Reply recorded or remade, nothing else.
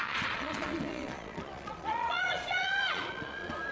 remade